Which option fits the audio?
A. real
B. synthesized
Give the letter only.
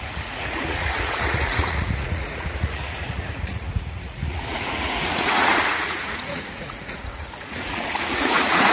B